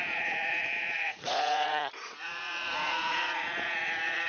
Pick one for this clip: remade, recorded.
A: remade